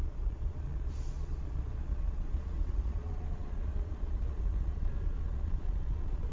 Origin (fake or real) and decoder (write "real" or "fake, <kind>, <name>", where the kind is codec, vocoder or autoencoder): fake, vocoder, Vocos